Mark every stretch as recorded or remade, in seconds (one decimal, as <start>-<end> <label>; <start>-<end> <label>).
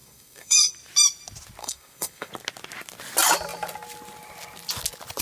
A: 0.0-0.7 remade; 0.7-1.6 recorded; 1.6-2.3 remade; 2.3-5.2 recorded